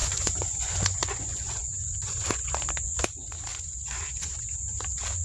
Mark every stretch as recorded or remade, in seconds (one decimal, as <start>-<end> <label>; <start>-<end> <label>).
0.0-2.5 remade; 2.5-3.5 recorded; 3.5-4.4 remade; 4.4-5.2 recorded